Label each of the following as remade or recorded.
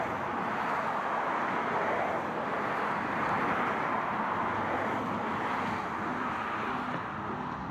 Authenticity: recorded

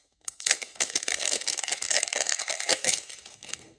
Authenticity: remade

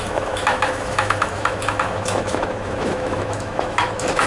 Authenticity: remade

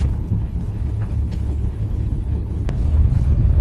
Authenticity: remade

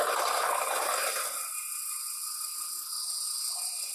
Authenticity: recorded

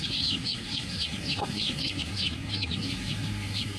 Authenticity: remade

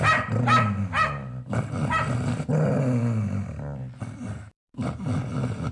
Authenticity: recorded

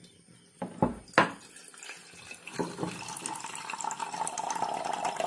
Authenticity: recorded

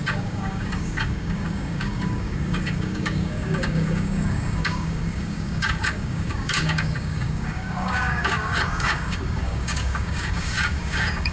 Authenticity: remade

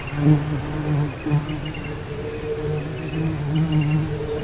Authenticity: recorded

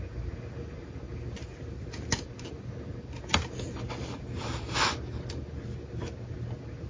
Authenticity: recorded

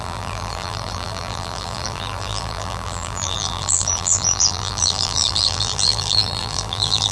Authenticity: remade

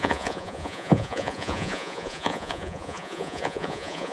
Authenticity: remade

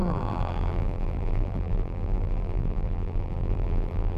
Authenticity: remade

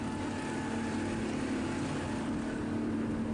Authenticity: recorded